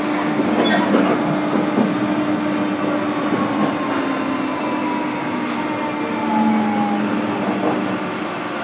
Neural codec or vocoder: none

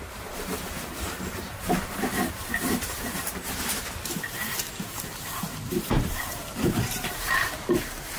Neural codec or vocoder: vocoder, BigVGAN v2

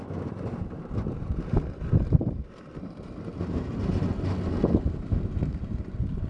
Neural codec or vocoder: vocoder, BigVGAN v2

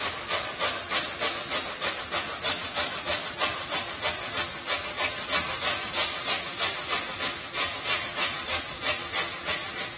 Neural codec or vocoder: none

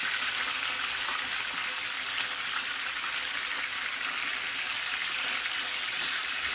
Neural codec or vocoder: none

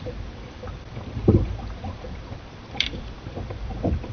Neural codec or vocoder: vocoder, BigVGAN v2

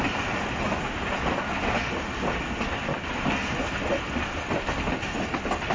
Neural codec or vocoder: none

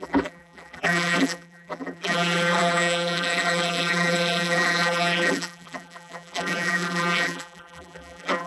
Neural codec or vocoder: vocoder, BigVGAN v2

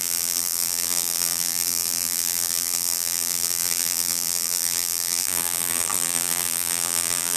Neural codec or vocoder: vocoder, BigVGAN v2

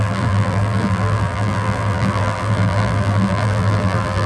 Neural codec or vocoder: vocoder, BigVGAN v2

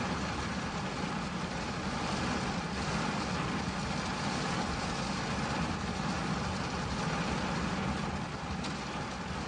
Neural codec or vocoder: none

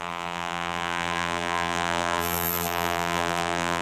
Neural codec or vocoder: vocoder, BigVGAN v2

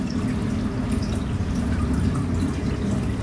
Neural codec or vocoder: none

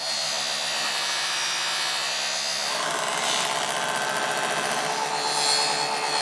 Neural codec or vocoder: none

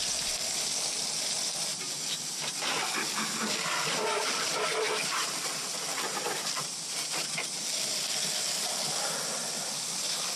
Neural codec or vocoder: vocoder, BigVGAN v2